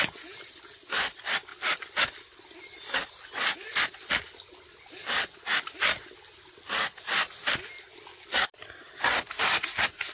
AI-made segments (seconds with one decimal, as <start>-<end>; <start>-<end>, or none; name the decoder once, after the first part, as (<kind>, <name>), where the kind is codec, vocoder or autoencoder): none